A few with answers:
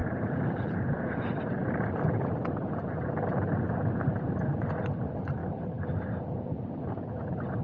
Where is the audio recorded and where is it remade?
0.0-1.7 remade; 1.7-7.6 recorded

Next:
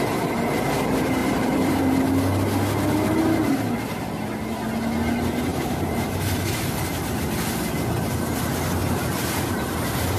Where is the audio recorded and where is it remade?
0.0-1.2 recorded; 1.2-2.0 remade; 2.0-5.5 recorded; 5.5-6.4 remade; 6.4-8.8 recorded; 8.8-9.6 remade; 9.6-10.2 recorded